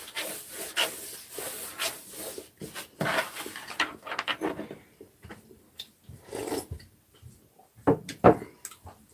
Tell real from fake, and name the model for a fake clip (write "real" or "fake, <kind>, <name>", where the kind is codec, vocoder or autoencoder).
real